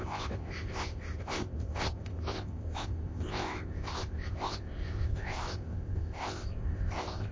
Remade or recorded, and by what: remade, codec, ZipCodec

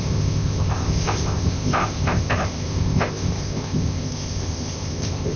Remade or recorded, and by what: remade, codec, ZipCodec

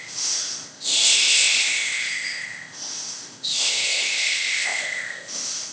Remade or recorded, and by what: remade, codec, ZipCodec